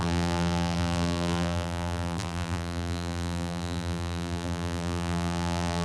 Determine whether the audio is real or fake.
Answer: fake